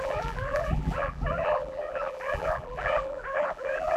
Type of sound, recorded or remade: remade